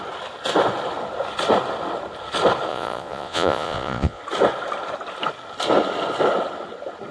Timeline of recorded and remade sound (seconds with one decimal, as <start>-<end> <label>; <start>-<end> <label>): 0.0-2.7 recorded; 2.7-4.2 remade; 4.2-7.1 recorded